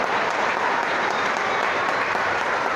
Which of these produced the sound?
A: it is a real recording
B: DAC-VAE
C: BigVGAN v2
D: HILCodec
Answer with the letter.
C